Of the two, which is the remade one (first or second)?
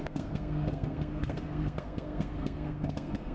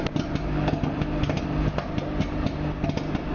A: first